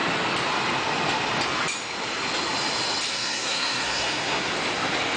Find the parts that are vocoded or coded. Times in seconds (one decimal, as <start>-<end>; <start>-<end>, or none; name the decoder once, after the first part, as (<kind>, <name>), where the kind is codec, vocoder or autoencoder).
3.1-4.5 (codec, SNAC)